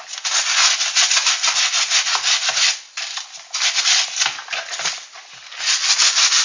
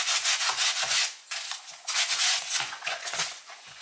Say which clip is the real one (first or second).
first